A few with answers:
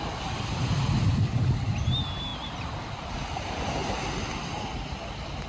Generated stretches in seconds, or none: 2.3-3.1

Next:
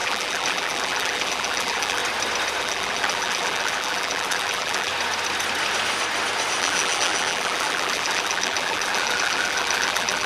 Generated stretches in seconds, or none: 0.0-2.0; 2.6-4.9; 6.6-10.3